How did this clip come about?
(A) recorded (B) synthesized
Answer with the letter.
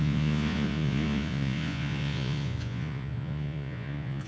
B